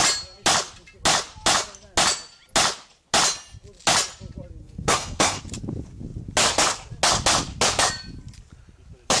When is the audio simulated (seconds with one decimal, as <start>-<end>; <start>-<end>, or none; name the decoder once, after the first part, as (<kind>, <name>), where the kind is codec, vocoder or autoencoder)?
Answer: 4.6-5.4 (codec, SNAC)